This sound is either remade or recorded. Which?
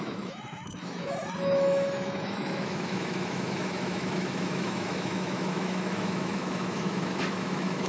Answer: remade